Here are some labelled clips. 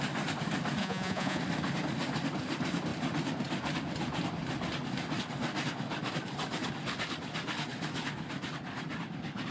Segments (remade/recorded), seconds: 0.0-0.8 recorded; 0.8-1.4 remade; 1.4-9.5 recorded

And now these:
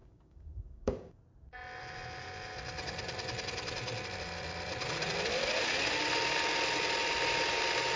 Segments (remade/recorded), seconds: 0.0-1.2 remade; 1.2-8.0 recorded

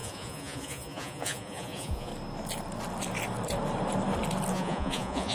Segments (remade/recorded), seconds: 0.0-2.1 remade; 2.1-4.5 recorded; 4.5-5.3 remade

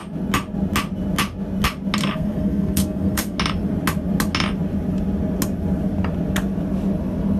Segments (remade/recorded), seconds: 0.0-2.0 recorded; 2.0-3.4 remade; 3.4-7.4 recorded

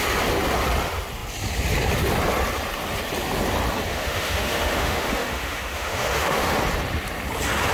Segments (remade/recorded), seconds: 0.0-3.9 recorded; 3.9-6.5 remade; 6.5-7.7 recorded

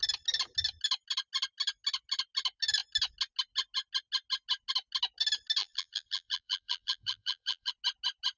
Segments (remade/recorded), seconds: 0.0-5.6 recorded; 5.6-7.7 remade; 7.7-8.4 recorded

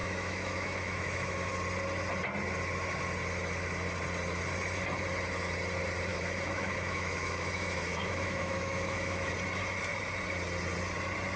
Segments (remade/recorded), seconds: 0.0-1.5 remade; 1.5-6.1 recorded; 6.1-9.3 remade; 9.3-11.4 recorded